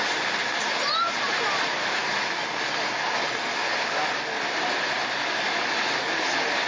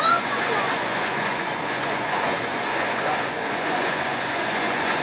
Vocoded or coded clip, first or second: second